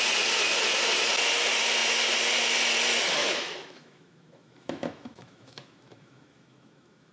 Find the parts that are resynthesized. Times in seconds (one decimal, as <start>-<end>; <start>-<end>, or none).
3.2-7.1